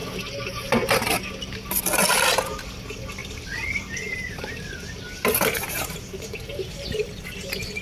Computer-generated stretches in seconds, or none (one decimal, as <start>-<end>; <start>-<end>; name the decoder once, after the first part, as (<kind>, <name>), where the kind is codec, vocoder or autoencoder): 3.2-7.2 (vocoder, BigVGAN v2)